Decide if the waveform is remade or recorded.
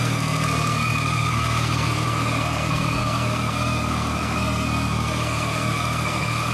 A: remade